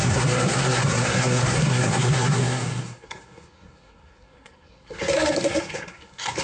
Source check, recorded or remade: remade